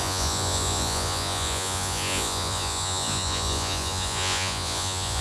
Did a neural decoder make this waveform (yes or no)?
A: yes